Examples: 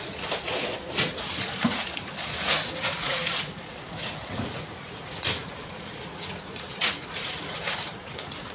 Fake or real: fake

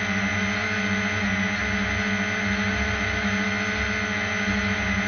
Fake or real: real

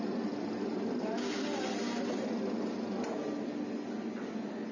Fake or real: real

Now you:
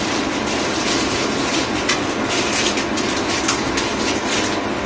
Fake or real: real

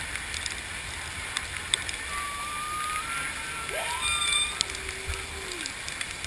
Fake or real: real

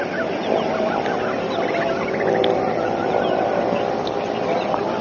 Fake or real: real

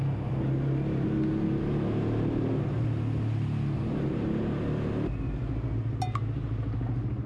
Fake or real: real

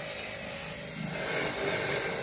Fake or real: real